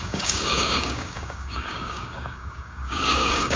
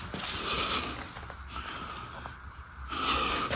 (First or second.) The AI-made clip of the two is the first